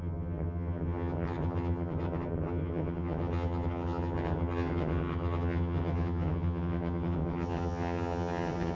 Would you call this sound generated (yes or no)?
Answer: yes